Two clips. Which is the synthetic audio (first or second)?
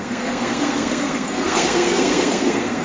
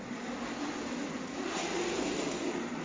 first